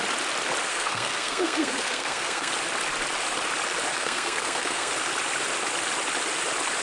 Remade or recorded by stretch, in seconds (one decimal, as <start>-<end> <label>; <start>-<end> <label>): 0.0-0.7 recorded; 0.7-2.5 remade; 2.5-3.9 recorded; 3.9-4.9 remade; 4.9-6.8 recorded